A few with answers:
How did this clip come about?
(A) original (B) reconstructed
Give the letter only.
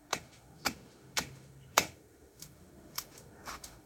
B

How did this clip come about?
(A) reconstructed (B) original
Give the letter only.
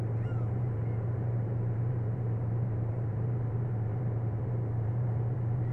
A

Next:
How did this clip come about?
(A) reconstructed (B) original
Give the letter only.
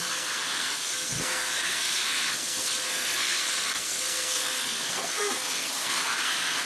A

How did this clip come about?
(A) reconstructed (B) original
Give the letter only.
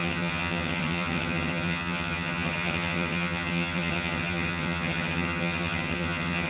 A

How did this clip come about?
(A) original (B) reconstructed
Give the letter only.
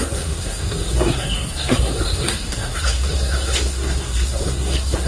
B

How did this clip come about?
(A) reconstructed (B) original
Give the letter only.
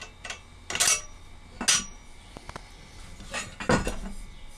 B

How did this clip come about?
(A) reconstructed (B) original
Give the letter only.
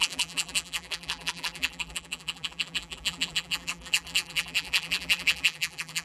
A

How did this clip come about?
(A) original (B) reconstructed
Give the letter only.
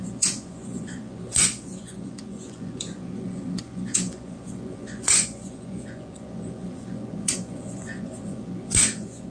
B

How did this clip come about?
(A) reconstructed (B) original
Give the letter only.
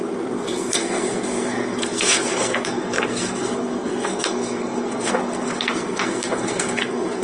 A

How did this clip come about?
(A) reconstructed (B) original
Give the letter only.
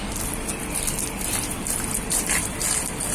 A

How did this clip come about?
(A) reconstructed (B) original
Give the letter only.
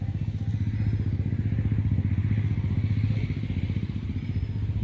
B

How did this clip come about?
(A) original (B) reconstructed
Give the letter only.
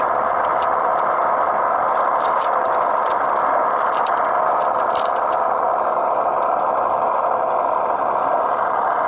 A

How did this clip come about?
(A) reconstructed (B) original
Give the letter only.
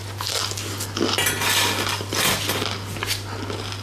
B